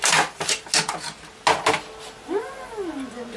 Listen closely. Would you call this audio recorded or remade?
recorded